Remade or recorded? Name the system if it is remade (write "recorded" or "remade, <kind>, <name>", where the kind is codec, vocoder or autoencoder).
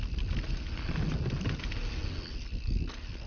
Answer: recorded